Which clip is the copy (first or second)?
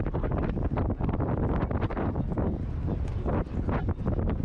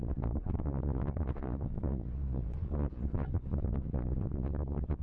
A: second